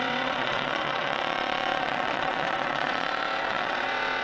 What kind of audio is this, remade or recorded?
remade